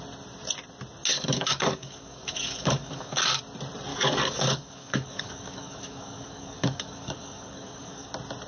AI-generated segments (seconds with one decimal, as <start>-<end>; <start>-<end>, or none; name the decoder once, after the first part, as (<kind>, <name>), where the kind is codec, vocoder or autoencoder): 1.1-3.4 (codec, DAC); 3.9-8.1